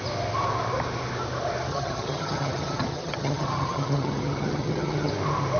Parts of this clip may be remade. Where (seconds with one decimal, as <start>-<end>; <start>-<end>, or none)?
1.7-5.1